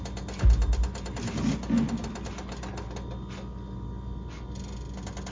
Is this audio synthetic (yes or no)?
no